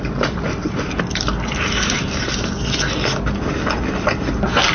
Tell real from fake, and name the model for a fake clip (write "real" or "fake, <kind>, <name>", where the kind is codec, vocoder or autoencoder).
real